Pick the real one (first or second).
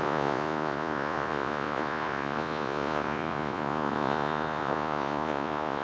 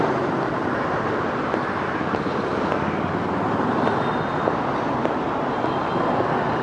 second